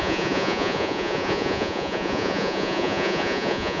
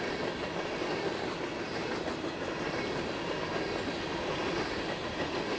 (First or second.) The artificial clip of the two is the first